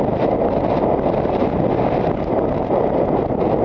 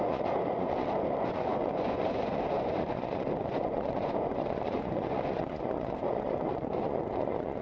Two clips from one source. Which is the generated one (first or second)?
second